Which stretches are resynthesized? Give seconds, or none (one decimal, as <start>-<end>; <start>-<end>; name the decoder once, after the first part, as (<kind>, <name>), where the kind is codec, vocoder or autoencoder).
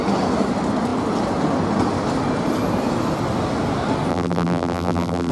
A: 4.1-5.3 (vocoder, BigVGAN v2)